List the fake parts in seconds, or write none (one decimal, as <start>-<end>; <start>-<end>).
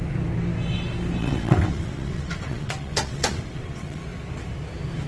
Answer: 1.2-4.0